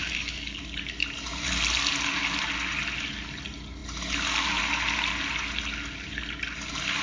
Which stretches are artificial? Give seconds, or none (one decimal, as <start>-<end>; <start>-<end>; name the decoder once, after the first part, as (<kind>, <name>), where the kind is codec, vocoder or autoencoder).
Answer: 0.0-0.6 (codec, DAC)

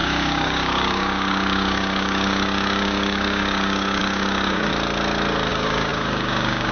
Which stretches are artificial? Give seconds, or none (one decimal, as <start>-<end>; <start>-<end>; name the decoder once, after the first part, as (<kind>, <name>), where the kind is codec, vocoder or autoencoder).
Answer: 0.0-4.7 (codec, DAC); 5.5-6.7

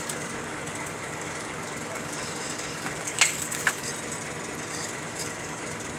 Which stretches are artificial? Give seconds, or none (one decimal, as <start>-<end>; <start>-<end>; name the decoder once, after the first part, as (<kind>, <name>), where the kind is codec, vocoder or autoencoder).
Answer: 0.0-3.9 (codec, DAC); 4.7-6.0

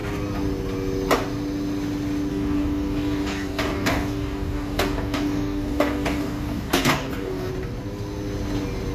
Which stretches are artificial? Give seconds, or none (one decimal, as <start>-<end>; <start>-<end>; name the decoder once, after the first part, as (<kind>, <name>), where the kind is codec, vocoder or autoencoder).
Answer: 2.3-7.5 (codec, DAC)

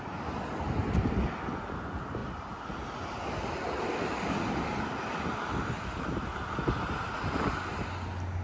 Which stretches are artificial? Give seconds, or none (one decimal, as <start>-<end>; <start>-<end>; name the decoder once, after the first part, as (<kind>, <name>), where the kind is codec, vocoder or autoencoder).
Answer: none

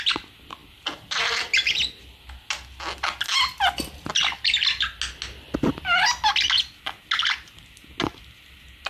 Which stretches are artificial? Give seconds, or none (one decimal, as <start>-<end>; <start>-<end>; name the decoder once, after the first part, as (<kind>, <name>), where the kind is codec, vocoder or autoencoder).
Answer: none

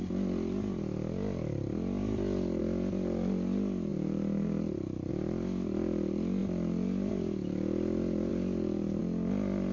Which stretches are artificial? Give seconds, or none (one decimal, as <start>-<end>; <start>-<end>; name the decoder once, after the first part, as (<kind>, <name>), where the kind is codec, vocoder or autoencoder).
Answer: none

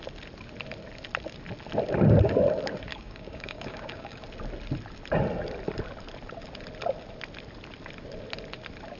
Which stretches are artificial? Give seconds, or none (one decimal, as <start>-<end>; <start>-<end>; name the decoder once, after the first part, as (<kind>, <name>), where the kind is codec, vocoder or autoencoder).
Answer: 2.9-4.2 (codec, DAC)